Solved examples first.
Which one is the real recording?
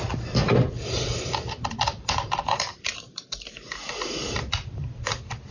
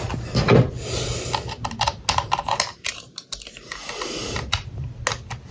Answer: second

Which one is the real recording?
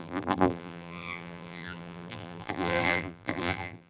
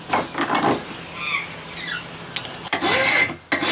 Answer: second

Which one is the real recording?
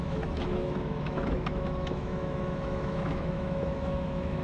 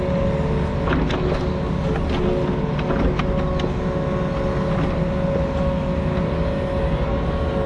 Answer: second